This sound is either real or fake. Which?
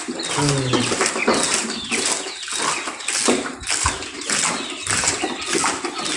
real